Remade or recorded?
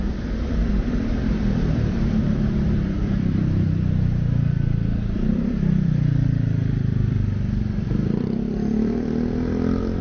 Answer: remade